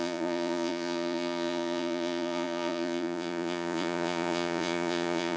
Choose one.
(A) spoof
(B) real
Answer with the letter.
A